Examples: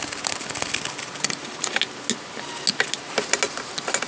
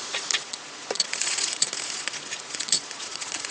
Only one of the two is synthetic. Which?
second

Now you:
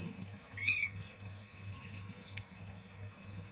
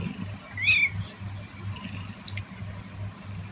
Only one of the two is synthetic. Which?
first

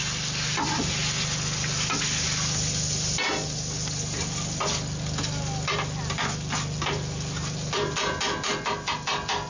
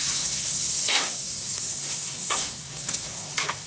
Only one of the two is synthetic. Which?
second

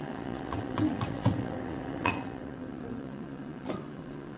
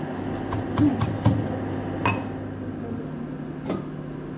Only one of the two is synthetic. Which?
first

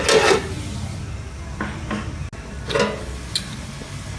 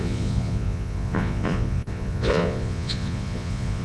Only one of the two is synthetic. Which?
second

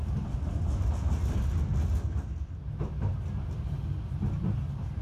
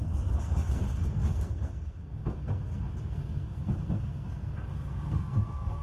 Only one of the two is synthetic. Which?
second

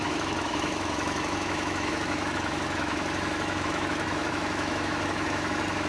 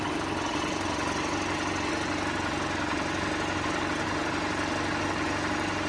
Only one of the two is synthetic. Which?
first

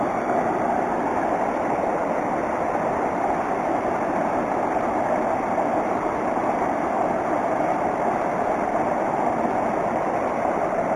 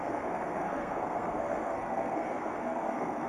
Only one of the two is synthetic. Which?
second